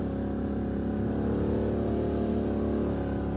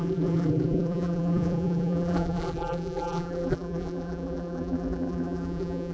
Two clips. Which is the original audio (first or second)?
first